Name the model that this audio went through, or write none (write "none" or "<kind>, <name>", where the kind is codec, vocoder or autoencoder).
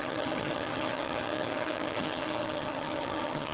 vocoder, HiFi-GAN